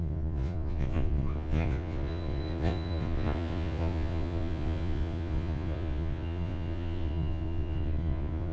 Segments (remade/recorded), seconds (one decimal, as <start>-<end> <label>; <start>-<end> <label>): 0.0-8.5 remade